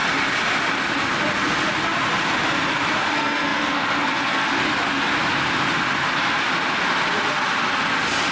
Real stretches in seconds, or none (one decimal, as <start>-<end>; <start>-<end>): 0.0-3.1; 4.5-8.3